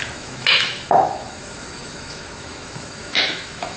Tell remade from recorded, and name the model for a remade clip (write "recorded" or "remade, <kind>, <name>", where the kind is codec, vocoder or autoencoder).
remade, autoencoder, DAC-VAE